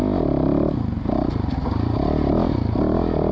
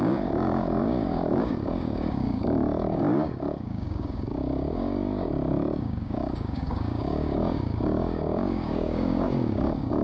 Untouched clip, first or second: first